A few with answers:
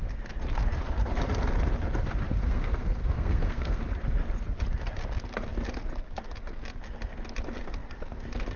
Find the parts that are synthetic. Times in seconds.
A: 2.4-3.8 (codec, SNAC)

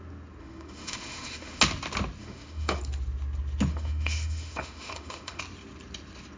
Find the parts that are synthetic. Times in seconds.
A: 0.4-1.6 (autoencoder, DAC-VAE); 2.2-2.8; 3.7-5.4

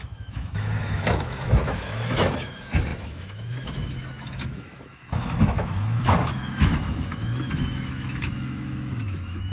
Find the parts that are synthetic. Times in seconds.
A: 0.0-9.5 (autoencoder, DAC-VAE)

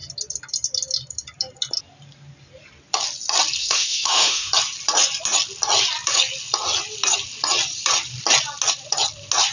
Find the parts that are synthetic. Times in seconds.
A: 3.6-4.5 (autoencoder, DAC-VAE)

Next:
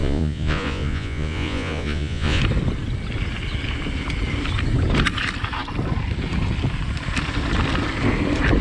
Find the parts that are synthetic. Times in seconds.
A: 0.0-2.4 (vocoder, Vocos)

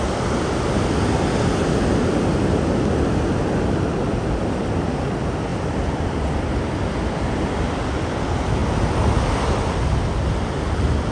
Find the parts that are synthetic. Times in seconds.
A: none